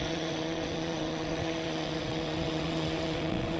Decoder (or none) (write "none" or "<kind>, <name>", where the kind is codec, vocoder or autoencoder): vocoder, WaveNeXt